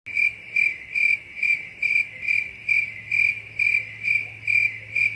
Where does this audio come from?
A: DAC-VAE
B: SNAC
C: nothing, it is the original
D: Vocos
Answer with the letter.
C